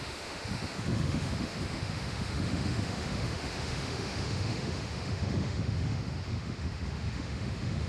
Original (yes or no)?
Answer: no